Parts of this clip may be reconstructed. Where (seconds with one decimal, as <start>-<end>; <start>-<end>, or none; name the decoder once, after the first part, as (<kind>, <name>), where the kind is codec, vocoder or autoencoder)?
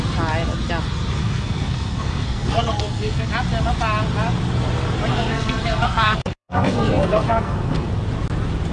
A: 1.2-3.3 (codec, SNAC); 5.1-7.9